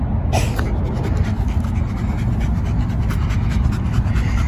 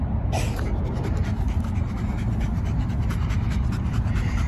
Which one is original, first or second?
first